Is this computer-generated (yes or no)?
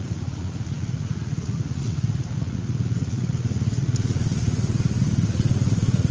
yes